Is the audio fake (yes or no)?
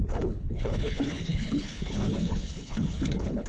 yes